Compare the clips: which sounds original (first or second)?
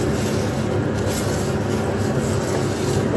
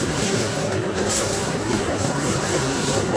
first